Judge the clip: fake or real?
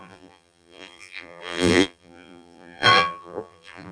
fake